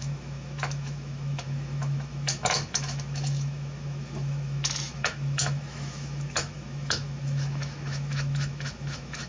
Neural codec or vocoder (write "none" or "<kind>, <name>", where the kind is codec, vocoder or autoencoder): autoencoder, DAC-VAE